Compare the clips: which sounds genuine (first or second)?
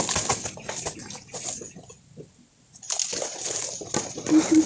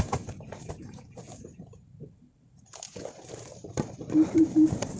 first